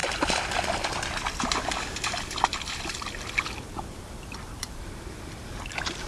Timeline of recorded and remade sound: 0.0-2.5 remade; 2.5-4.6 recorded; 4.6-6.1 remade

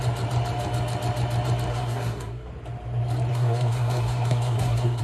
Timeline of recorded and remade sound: 0.0-1.7 recorded; 1.7-2.5 remade; 2.5-3.3 recorded; 3.3-5.0 remade

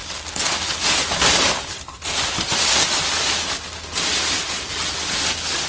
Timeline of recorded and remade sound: 0.0-5.7 recorded

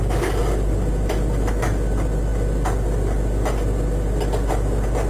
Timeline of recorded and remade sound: 0.0-0.4 recorded; 0.4-1.5 remade; 1.5-5.1 recorded

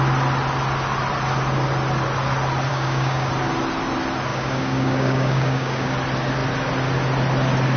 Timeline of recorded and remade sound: 0.0-2.7 recorded; 2.7-3.3 remade; 3.3-4.3 recorded; 4.3-5.9 remade; 5.9-7.8 recorded

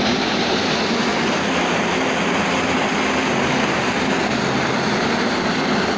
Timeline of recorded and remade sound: 0.0-6.0 recorded

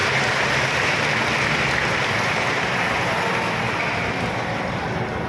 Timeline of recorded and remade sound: 0.0-5.3 recorded